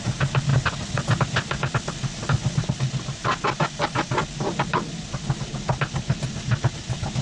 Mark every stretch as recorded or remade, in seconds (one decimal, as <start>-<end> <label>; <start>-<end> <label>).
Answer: 0.0-7.2 recorded